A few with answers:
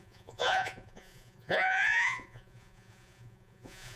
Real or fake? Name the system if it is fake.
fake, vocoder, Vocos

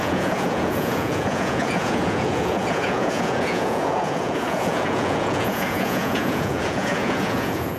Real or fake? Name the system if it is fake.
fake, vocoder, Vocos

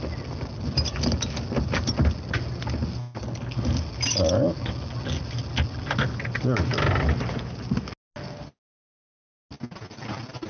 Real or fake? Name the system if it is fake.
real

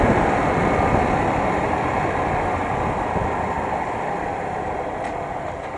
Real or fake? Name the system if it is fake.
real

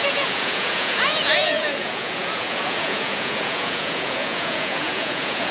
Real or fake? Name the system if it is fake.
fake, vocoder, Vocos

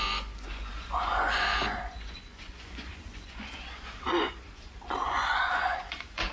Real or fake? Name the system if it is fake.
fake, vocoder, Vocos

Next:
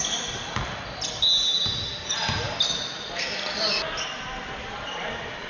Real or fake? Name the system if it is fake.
real